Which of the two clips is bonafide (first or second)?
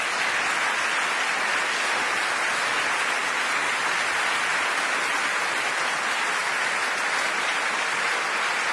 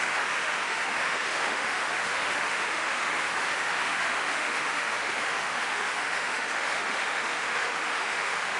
first